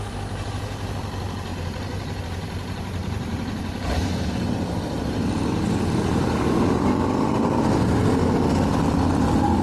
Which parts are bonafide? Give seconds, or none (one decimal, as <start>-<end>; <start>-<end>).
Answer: 0.0-1.5; 2.2-3.0; 6.9-9.6